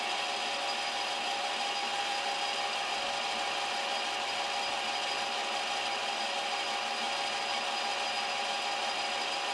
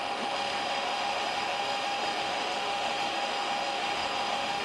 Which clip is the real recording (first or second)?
first